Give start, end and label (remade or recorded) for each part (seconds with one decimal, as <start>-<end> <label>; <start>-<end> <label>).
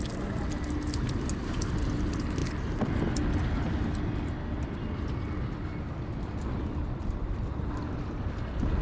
0.0-8.8 recorded